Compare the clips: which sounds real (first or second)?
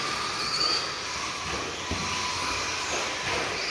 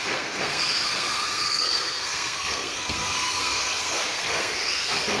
first